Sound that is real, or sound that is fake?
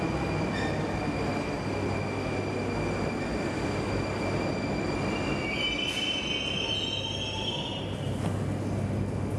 real